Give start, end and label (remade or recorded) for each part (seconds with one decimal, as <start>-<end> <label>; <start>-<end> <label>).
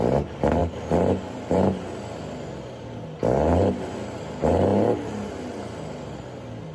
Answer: 0.0-6.7 recorded